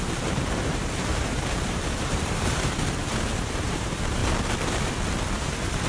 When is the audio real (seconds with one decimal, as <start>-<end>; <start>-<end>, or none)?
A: 4.2-5.3